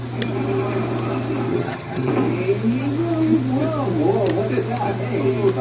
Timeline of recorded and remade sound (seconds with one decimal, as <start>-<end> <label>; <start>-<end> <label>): 0.0-1.5 recorded; 1.5-2.1 remade; 2.1-5.6 recorded